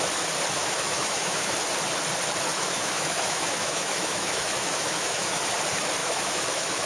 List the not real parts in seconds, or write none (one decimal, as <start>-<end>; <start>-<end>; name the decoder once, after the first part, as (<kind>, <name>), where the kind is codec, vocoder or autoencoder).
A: 0.6-1.5 (autoencoder, DAC-VAE); 2.5-5.4; 6.0-6.9